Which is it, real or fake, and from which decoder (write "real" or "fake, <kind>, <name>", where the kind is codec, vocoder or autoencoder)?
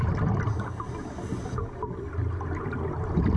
real